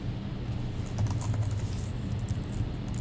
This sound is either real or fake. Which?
real